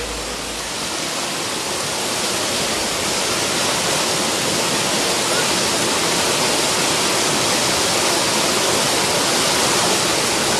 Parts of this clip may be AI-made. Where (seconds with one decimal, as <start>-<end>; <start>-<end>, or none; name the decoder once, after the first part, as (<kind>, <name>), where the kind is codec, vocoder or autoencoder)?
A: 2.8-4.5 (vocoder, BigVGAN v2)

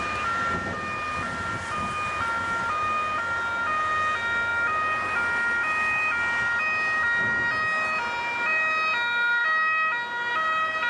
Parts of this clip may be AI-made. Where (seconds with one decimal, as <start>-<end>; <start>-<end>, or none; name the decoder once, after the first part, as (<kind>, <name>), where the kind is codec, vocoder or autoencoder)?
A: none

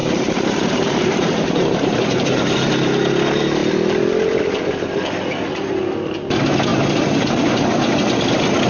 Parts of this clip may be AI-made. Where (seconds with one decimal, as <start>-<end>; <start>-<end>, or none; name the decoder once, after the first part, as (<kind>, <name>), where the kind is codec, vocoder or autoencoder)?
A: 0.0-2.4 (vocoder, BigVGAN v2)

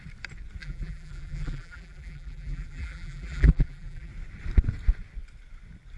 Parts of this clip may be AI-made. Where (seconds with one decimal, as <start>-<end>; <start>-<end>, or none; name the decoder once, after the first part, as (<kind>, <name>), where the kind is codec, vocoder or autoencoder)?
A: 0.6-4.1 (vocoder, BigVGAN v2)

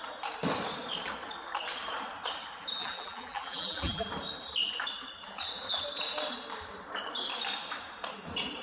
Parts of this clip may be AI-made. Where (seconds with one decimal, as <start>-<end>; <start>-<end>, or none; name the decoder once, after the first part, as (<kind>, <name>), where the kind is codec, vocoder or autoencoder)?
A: 2.8-4.1 (vocoder, BigVGAN v2)

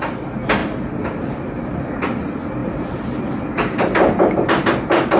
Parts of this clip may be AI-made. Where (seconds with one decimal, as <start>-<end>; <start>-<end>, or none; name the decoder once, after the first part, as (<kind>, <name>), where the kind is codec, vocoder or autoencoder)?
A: 0.6-1.9 (vocoder, BigVGAN v2); 2.6-5.2

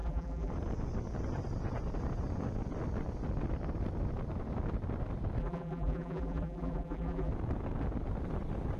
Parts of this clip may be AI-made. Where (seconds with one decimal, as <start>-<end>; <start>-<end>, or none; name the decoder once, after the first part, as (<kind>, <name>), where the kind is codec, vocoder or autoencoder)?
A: 0.0-0.5 (vocoder, BigVGAN v2); 5.4-7.3

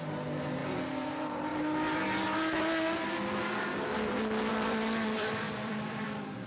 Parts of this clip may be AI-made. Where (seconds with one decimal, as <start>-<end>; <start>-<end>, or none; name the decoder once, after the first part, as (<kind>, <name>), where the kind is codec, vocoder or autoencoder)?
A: 0.6-1.1 (vocoder, BigVGAN v2); 4.5-6.5